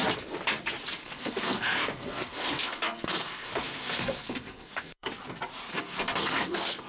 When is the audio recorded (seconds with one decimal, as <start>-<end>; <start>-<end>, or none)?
0.0-1.0; 5.1-5.7